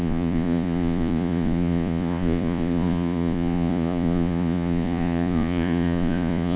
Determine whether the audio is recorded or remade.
remade